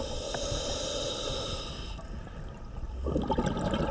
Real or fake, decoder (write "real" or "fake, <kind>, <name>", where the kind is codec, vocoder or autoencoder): real